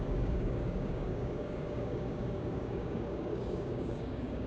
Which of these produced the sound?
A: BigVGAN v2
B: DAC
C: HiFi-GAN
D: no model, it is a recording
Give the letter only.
B